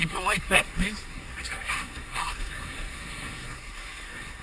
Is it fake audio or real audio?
fake